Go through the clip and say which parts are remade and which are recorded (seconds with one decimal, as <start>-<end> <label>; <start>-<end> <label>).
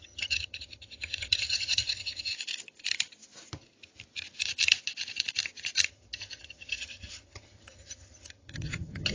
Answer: 0.0-2.3 remade; 2.3-5.9 recorded; 5.9-9.1 remade